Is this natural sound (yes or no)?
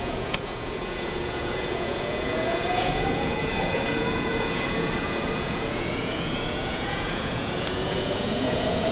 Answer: no